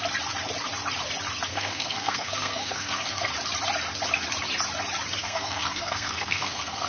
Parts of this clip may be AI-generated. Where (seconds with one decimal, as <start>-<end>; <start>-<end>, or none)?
1.5-3.3; 5.2-6.9